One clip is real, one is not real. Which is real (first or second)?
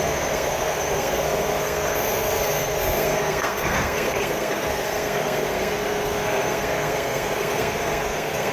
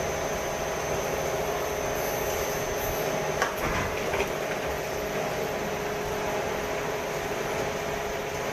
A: second